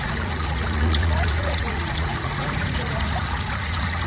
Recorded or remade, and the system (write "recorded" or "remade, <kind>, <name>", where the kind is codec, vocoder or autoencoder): remade, vocoder, Vocos